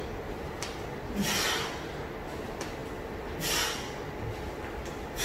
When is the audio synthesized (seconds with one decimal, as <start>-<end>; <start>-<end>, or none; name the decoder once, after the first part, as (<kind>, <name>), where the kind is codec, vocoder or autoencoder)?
none